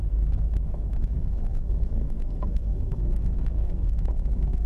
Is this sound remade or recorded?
remade